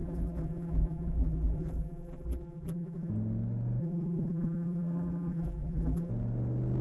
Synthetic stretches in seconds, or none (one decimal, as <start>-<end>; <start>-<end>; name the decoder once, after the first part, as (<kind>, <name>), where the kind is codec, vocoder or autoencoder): 0.0-3.1 (vocoder, BigVGAN v2); 3.8-6.1